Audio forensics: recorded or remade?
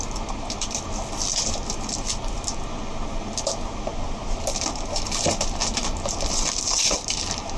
recorded